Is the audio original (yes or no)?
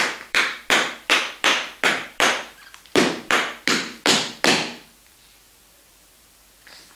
no